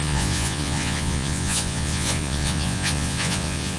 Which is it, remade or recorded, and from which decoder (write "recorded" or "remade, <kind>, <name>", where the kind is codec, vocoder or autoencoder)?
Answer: remade, vocoder, Vocos